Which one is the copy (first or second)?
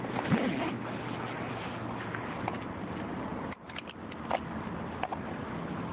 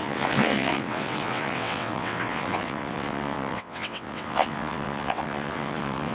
second